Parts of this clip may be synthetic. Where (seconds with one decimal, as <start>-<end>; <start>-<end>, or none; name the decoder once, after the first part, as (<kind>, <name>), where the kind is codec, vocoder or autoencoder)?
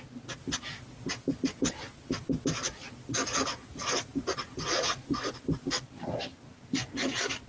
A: 4.7-5.4 (vocoder, Vocos)